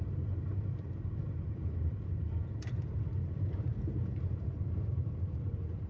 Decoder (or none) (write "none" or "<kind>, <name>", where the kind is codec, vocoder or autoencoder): vocoder, BigVGAN v2